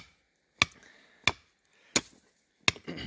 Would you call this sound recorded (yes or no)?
yes